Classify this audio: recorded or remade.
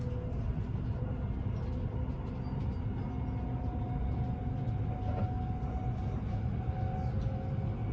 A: recorded